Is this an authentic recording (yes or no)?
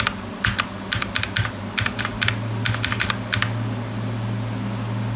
yes